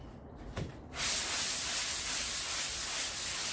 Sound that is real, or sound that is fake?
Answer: real